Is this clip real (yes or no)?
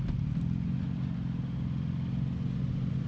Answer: yes